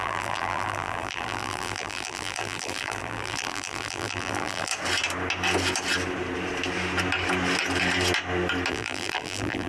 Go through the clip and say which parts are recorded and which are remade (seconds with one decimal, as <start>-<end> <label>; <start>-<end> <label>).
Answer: 0.0-4.7 remade; 4.7-8.7 recorded; 8.7-9.7 remade